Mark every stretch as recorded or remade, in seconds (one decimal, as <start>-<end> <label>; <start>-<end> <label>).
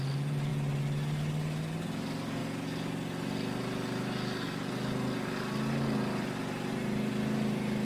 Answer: 0.0-7.8 recorded